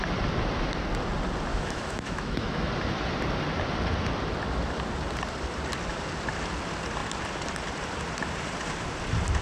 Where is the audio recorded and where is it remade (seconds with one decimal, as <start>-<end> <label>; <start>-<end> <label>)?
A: 0.0-1.5 recorded; 1.5-2.7 remade; 2.7-9.4 recorded